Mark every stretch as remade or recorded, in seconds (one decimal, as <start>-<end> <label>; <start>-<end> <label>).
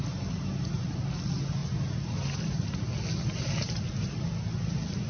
0.0-5.1 recorded